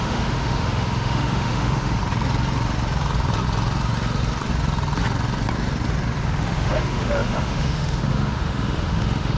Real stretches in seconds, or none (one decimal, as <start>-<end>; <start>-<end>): 2.0-6.2

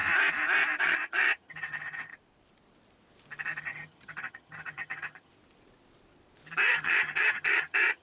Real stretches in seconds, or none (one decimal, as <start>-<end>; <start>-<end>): 0.0-0.8; 2.1-3.6; 5.3-6.7

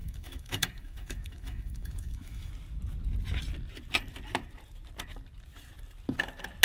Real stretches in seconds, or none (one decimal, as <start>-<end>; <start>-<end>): 2.5-6.6

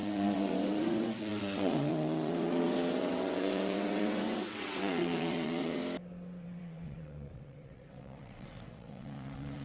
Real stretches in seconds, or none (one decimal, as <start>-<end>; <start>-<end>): 5.8-6.6